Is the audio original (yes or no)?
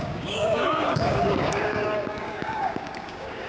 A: no